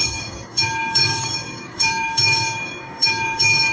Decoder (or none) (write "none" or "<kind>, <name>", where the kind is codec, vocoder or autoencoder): codec, DAC